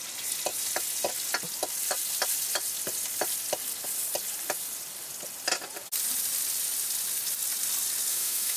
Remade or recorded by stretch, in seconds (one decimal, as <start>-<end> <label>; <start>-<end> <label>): 0.0-8.1 recorded; 8.1-8.6 remade